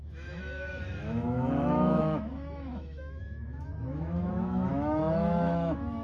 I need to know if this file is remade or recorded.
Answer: remade